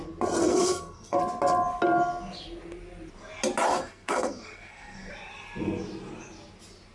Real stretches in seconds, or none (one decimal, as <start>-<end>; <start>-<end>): 0.0-0.4; 1.2-3.7; 5.1-6.9